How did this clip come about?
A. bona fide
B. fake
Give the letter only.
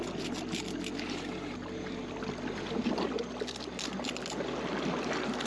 A